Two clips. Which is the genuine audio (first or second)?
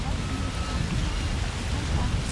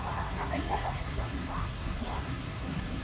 first